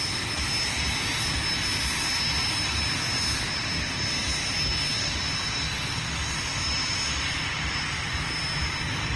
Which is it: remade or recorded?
recorded